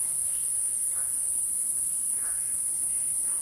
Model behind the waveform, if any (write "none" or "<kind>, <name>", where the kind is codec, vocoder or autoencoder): codec, SNAC